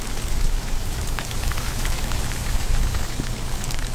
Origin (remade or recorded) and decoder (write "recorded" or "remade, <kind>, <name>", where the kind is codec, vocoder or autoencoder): remade, codec, DAC